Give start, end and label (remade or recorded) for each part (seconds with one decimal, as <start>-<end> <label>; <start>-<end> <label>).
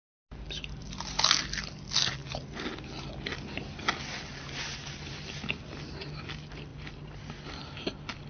0.0-4.3 recorded; 4.3-5.1 remade; 5.1-8.3 recorded